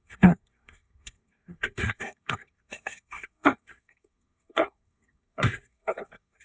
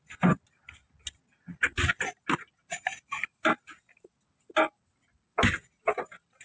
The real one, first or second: second